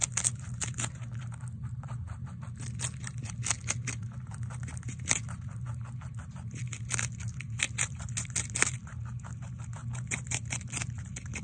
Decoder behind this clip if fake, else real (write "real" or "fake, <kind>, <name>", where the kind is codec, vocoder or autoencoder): real